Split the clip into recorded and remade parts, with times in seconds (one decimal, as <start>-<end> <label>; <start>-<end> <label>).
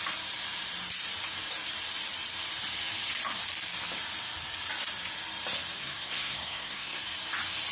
0.0-5.8 recorded; 5.8-7.0 remade; 7.0-7.7 recorded